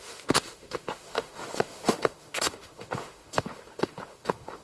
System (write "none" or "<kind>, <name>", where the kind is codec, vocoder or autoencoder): autoencoder, DAC-VAE